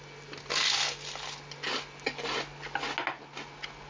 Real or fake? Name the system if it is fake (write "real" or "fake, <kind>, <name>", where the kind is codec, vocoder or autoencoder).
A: real